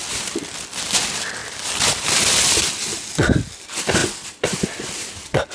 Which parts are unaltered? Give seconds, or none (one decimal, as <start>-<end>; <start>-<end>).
0.9-1.4; 2.4-4.0; 5.1-5.5

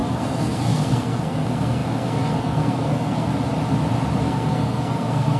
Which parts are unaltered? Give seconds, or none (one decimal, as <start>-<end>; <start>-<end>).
3.3-4.2

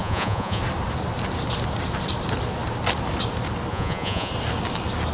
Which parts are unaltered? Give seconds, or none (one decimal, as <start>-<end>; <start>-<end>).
0.6-3.7; 4.3-5.1

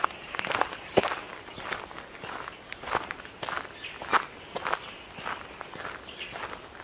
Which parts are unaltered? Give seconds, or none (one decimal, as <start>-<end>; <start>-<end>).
0.0-6.8

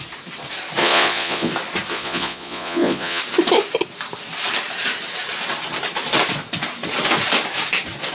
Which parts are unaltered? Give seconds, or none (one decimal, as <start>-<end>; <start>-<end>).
0.0-0.8; 1.5-1.9; 3.2-8.1